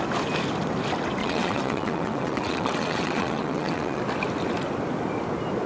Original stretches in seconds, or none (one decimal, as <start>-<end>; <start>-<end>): 0.0-1.2; 4.0-5.7